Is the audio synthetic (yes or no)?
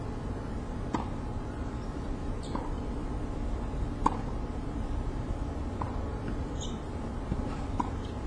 yes